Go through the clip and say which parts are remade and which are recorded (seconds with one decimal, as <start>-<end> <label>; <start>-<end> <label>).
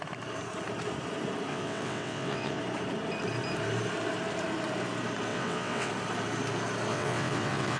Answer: 0.0-1.5 recorded; 1.5-2.6 remade; 2.6-5.3 recorded; 5.3-5.9 remade; 5.9-6.9 recorded; 6.9-7.8 remade